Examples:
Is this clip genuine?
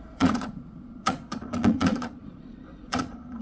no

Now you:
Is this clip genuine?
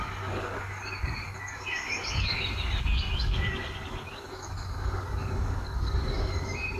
no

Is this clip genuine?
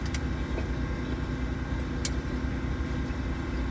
yes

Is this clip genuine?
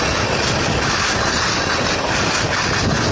yes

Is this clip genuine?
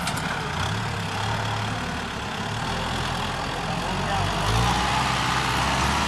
yes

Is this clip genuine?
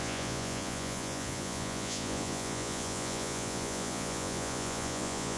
no